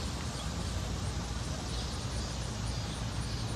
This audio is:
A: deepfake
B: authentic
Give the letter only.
B